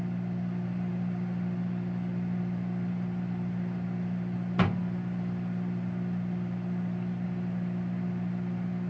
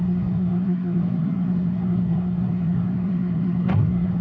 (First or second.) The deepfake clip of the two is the second